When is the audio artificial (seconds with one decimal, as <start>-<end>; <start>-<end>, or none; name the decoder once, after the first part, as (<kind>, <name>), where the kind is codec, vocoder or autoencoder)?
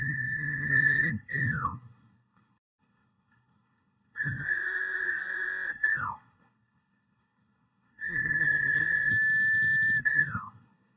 0.0-9.1 (codec, SNAC); 10.0-11.0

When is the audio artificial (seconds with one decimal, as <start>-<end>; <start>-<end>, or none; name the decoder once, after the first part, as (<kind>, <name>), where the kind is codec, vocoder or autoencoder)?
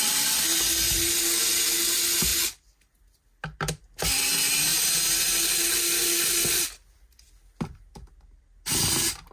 none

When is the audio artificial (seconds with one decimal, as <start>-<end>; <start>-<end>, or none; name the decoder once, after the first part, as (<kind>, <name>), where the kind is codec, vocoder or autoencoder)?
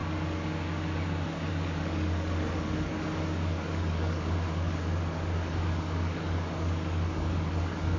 0.0-8.0 (codec, DAC)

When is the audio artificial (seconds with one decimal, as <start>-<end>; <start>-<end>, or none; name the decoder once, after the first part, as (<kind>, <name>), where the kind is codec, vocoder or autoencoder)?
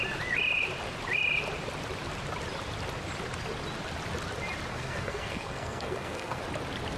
4.7-6.4 (codec, SNAC)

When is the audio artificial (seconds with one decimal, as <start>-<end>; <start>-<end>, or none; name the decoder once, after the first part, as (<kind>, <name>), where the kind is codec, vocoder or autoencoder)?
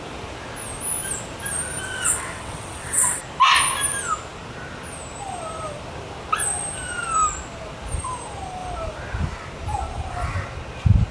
1.8-3.2 (vocoder, WaveNeXt)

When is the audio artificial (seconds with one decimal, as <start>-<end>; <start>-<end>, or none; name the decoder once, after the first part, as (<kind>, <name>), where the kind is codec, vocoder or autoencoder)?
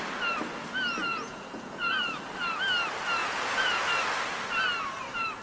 1.1-2.2 (vocoder, Vocos); 3.2-3.8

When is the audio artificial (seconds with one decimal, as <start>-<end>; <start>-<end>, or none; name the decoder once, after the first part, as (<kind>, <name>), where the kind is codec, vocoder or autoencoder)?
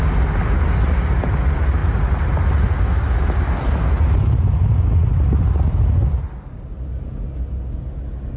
none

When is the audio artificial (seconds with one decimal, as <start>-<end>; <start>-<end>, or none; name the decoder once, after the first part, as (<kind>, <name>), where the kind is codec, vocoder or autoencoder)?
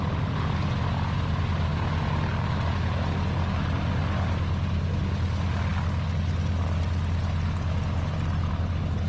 none